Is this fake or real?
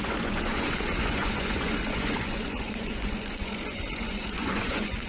fake